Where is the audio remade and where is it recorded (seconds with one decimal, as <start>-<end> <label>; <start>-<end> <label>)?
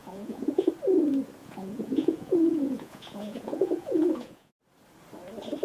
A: 0.0-0.7 remade; 0.7-1.4 recorded; 1.4-4.5 remade; 4.5-5.6 recorded